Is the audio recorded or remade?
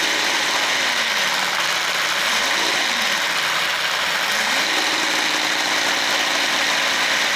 recorded